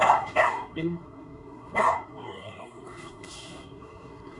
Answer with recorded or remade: remade